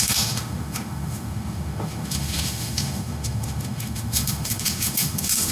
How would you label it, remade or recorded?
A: remade